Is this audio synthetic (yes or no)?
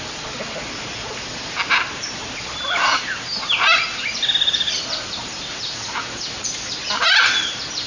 no